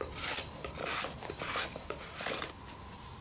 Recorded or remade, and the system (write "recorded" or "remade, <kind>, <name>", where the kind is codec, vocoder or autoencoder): recorded